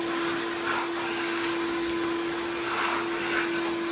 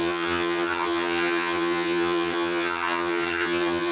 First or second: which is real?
first